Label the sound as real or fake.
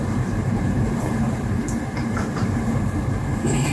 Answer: fake